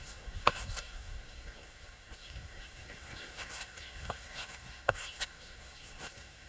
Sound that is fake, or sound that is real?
fake